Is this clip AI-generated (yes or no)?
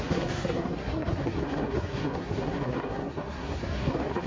yes